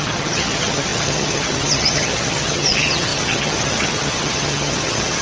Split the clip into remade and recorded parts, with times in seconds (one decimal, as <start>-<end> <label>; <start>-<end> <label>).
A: 0.0-5.2 remade